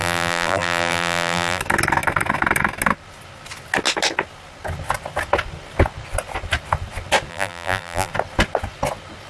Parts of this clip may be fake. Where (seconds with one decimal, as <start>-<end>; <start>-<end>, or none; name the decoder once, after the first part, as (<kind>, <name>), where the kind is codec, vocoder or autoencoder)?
0.0-1.6 (vocoder, BigVGAN v2); 7.3-8.1